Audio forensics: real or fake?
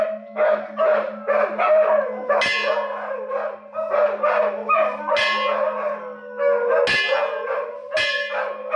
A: real